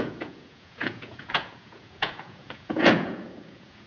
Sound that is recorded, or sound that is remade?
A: remade